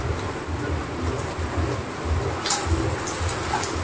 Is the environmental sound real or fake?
real